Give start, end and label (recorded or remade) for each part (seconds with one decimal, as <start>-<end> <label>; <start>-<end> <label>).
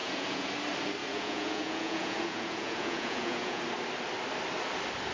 0.0-0.5 remade; 0.5-1.0 recorded; 1.0-3.6 remade; 3.6-5.1 recorded